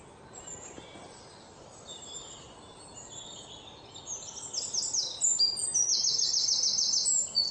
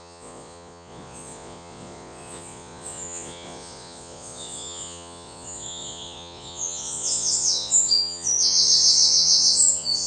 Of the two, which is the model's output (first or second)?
second